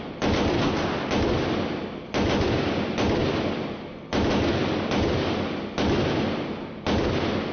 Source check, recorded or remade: recorded